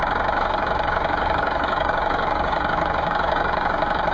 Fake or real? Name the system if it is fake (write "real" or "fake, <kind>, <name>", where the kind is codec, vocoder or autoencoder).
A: fake, codec, DAC